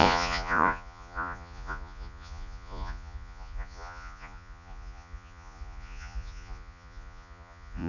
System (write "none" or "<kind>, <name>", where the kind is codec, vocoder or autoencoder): vocoder, Vocos